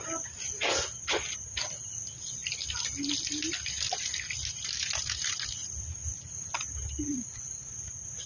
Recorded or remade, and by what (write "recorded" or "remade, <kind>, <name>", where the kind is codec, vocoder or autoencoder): recorded